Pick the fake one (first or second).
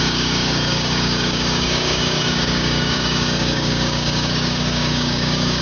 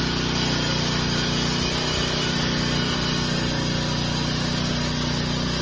first